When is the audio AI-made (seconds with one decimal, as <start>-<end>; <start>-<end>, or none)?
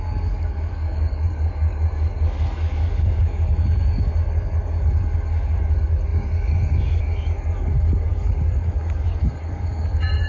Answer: 0.0-10.3